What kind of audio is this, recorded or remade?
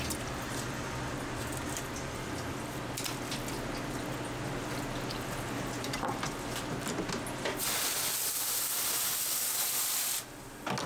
recorded